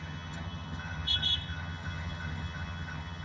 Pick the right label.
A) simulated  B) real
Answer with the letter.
A